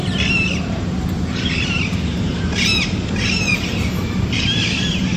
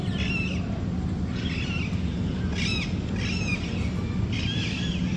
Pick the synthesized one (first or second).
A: first